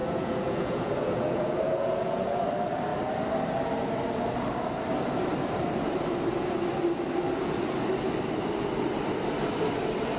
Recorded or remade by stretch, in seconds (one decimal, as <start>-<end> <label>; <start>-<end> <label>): 0.0-2.5 remade; 2.5-10.2 recorded